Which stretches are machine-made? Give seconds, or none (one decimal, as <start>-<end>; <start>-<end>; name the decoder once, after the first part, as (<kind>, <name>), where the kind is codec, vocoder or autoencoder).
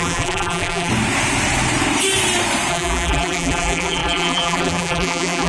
0.0-0.9 (vocoder, BigVGAN v2); 2.7-5.5